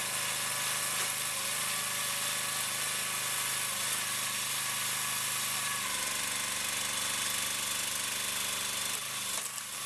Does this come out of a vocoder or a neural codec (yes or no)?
no